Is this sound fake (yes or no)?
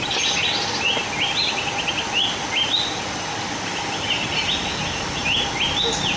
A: no